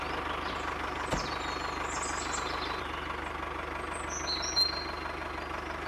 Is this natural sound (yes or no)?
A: yes